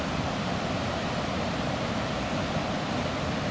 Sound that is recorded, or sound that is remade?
recorded